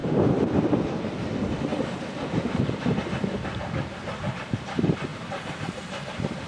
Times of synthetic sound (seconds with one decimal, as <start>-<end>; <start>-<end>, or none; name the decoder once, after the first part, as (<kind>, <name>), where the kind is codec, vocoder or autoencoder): 0.0-0.7 (vocoder, BigVGAN v2); 5.1-6.5